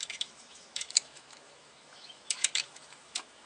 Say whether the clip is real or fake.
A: fake